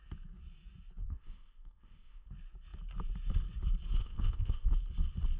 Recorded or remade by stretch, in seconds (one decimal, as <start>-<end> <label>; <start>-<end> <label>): 0.0-1.0 recorded; 1.0-2.3 remade; 2.3-4.0 recorded; 4.0-4.7 remade; 4.7-5.4 recorded